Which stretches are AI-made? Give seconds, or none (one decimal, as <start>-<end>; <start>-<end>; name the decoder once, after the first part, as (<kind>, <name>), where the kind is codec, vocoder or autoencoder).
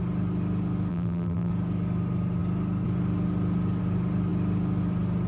0.9-1.5 (vocoder, BigVGAN v2)